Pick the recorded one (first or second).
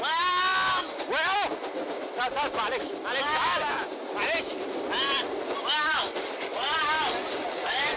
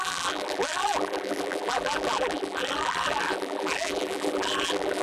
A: first